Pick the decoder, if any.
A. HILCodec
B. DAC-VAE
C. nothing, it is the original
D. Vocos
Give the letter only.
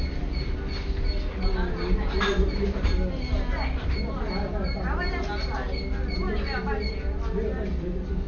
C